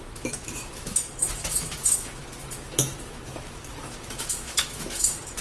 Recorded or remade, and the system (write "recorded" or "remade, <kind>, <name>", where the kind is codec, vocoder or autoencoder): remade, autoencoder, DAC-VAE